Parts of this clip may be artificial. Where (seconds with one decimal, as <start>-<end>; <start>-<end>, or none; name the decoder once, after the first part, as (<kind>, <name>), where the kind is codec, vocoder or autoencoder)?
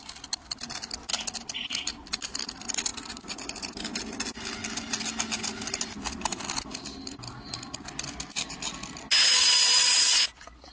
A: 2.9-4.0 (vocoder, BigVGAN v2)